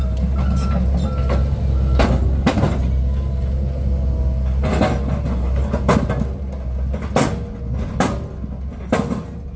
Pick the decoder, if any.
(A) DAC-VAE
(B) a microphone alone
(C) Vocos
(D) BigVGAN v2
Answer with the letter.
B